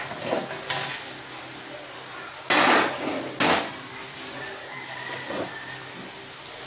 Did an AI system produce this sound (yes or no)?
no